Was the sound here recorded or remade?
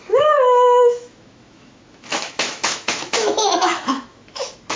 remade